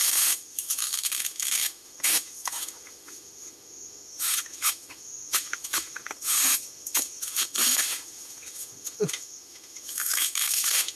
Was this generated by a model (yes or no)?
yes